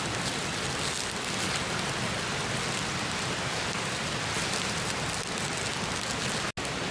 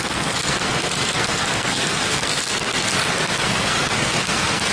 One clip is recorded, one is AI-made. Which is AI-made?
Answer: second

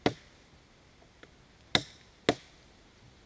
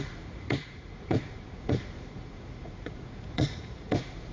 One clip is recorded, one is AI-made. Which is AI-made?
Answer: second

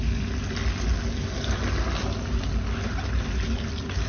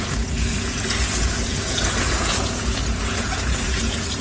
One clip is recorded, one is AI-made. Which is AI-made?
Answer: second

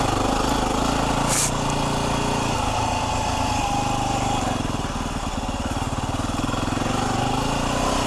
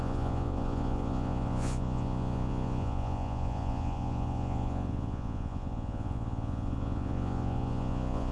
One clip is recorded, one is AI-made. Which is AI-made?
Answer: second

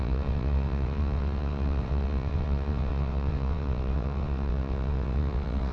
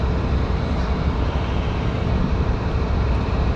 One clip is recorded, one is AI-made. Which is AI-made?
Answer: first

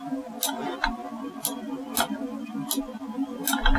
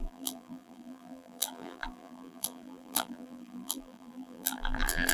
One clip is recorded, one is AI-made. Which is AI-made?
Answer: second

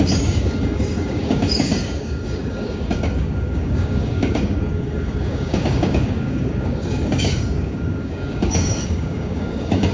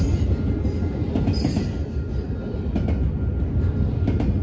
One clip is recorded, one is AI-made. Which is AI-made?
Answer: first